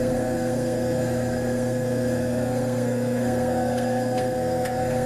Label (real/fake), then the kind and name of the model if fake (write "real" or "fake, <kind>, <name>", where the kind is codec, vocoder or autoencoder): fake, codec, SNAC